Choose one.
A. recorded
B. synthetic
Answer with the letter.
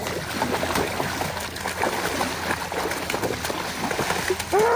A